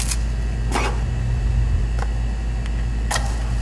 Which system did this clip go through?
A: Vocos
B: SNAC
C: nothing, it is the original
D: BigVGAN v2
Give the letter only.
C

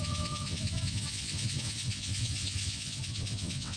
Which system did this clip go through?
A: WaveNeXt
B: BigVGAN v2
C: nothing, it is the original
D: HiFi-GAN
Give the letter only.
A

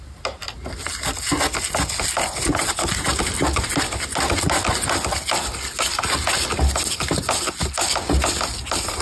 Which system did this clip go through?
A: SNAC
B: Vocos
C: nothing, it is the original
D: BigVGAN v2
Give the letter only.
C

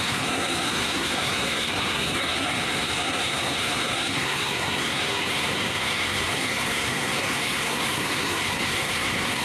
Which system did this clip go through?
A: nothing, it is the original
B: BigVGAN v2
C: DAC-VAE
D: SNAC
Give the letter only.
D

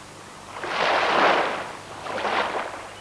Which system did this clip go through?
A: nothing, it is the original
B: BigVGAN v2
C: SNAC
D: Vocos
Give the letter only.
A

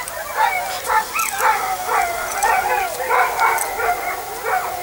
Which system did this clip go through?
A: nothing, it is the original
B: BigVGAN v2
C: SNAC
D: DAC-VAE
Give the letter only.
A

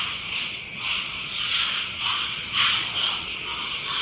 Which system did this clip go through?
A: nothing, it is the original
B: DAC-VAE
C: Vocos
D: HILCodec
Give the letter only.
C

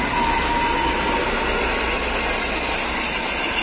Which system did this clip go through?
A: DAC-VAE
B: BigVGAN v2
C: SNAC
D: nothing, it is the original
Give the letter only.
D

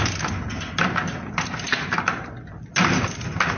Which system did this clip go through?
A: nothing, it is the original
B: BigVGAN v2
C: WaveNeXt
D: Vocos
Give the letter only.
A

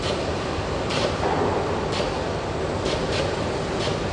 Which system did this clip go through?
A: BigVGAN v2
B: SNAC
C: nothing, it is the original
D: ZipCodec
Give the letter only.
C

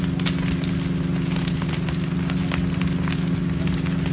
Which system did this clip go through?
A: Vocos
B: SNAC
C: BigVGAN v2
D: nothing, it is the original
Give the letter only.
D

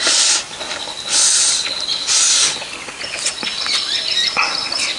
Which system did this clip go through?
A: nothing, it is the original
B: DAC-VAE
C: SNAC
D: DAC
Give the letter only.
A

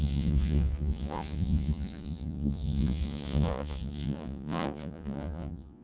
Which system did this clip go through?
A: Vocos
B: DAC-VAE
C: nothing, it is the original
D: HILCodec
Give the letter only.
A